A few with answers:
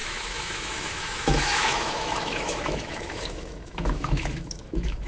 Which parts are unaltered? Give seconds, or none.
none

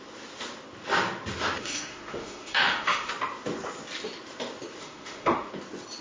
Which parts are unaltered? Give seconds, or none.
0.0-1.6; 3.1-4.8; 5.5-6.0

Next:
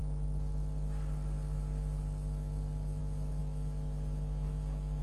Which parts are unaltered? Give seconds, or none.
0.0-3.4

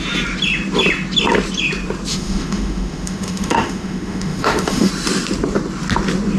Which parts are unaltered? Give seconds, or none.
0.0-2.1; 4.9-6.4

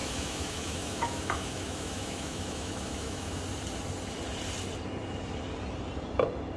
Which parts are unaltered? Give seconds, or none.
3.4-6.6